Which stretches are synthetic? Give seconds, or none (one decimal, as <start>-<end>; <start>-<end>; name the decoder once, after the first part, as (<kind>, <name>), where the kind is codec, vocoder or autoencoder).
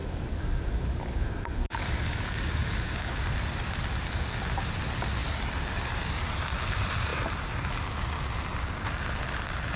0.0-3.1 (codec, DAC)